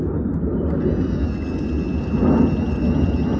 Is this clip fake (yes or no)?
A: no